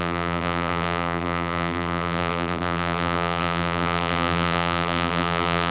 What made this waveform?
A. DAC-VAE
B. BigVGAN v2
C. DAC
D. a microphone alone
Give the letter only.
B